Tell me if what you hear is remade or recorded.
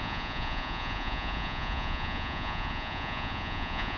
remade